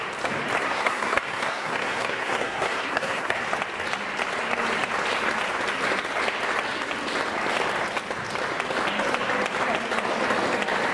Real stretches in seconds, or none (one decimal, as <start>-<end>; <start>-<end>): 0.0-0.6; 3.4-10.9